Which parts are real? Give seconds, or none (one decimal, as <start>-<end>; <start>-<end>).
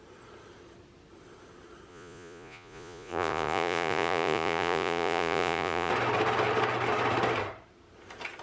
0.0-1.9; 5.9-8.4